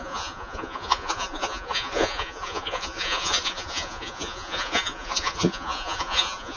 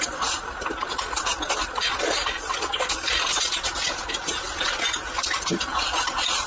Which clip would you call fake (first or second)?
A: first